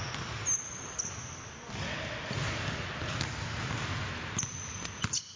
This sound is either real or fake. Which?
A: real